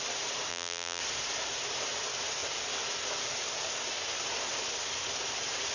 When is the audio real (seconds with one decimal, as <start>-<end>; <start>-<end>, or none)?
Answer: 0.0-0.5; 1.0-5.7